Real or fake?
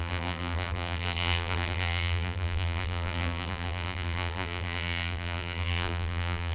fake